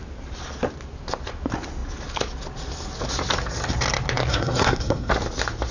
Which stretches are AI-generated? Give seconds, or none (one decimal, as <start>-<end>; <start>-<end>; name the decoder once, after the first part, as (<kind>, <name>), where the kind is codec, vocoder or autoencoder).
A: 4.3-5.1 (codec, SNAC)